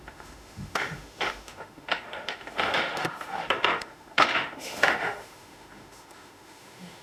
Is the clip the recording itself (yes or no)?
no